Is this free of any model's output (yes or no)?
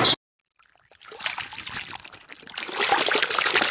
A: yes